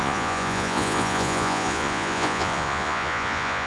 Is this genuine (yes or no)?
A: no